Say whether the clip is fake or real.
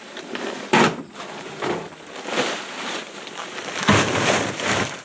fake